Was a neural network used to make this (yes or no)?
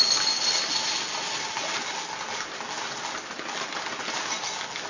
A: no